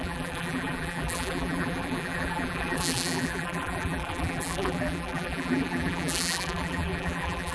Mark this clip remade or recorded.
remade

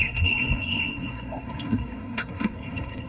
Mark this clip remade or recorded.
remade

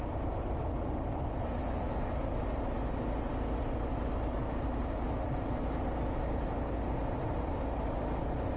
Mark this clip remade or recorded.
recorded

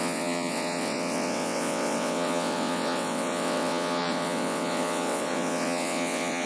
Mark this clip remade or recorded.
remade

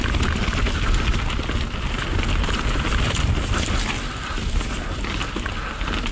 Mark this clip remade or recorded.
recorded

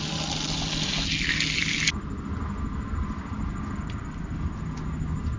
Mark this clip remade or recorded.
recorded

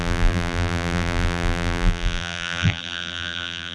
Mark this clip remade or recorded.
remade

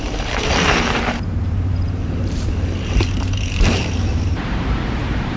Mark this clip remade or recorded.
remade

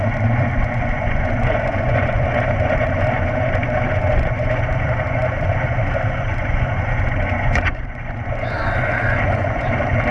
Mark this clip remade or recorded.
remade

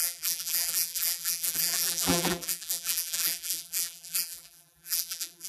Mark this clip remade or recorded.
remade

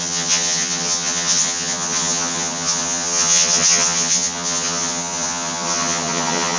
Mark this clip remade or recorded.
remade